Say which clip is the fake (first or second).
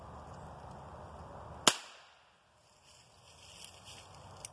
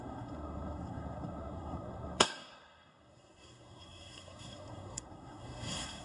second